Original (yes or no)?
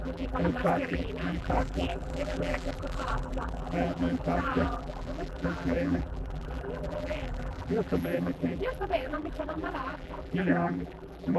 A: no